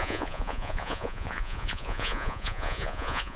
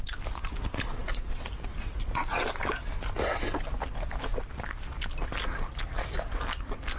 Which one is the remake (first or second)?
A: first